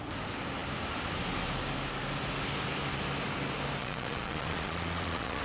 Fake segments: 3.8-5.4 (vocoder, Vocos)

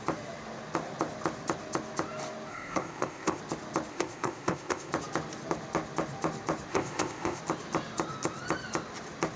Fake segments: 2.5-3.4 (codec, ZipCodec); 3.9-4.9; 6.7-7.4

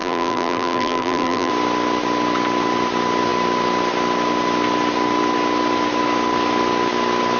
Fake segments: 0.0-1.5 (vocoder, BigVGAN v2)

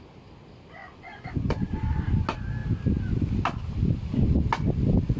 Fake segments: 0.8-2.0 (vocoder, Vocos)

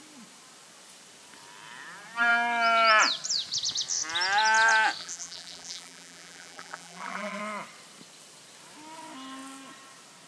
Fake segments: 5.0-7.4 (vocoder, BigVGAN v2)

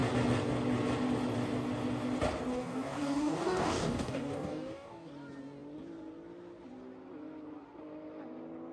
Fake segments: 2.5-5.1 (codec, DAC)